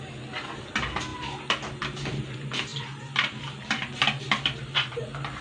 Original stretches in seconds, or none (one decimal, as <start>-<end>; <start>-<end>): 0.0-5.4